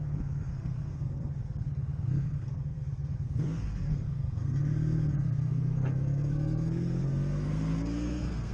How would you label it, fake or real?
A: fake